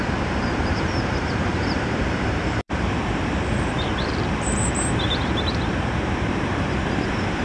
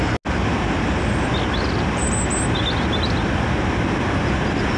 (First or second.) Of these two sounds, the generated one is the first